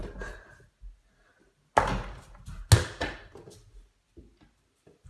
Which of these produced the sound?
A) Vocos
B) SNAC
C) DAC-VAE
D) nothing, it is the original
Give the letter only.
D